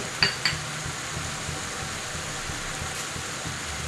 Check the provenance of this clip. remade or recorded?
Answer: recorded